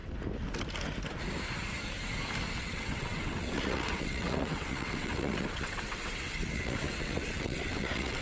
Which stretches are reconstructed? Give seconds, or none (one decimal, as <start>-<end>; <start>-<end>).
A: 2.5-8.2